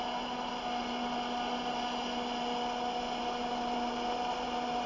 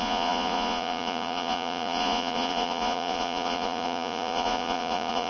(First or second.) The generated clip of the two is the second